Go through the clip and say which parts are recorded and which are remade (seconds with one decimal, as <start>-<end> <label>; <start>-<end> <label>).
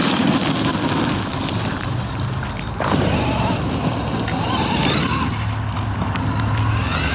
0.0-1.7 recorded; 1.7-3.4 remade; 3.4-7.1 recorded